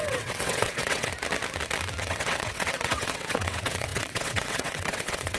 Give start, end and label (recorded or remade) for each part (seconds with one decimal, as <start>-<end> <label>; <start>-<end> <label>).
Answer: 0.0-1.1 remade; 1.1-2.0 recorded; 2.0-5.4 remade